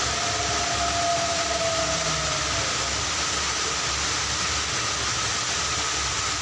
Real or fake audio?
real